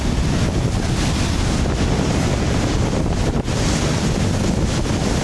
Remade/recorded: recorded